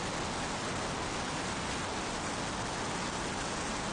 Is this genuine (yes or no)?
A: yes